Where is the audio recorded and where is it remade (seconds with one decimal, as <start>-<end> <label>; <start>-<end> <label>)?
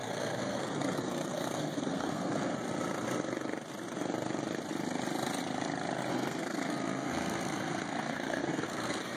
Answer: 0.0-2.5 remade; 2.5-6.1 recorded; 6.1-9.2 remade